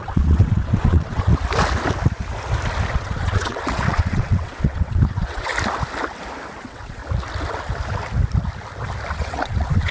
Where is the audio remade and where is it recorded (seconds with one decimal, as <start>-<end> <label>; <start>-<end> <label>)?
0.0-1.3 remade; 1.3-2.9 recorded; 2.9-5.5 remade; 5.5-6.6 recorded; 6.6-7.0 remade; 7.0-9.1 recorded; 9.1-9.9 remade